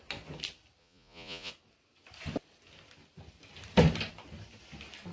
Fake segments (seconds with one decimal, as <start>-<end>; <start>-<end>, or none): 0.8-1.5